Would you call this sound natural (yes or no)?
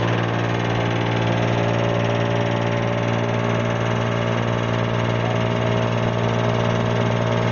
yes